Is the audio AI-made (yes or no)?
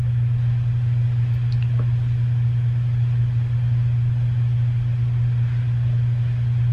no